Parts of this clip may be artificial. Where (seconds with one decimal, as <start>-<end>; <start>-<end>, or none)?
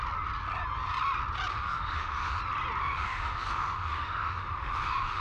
1.5-2.4; 2.8-5.2